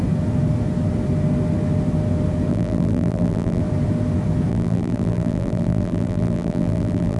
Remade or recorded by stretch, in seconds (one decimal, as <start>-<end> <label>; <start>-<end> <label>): 0.0-2.5 recorded; 2.5-3.6 remade; 3.6-4.5 recorded; 4.5-7.2 remade